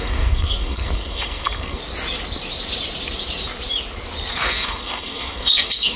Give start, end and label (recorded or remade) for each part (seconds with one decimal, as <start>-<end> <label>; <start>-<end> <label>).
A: 0.0-1.8 remade; 1.8-4.3 recorded; 4.3-6.0 remade